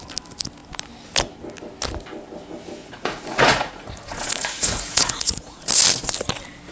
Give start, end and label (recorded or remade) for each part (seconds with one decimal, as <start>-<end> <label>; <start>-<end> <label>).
0.0-2.8 recorded; 2.8-5.7 remade; 5.7-6.7 recorded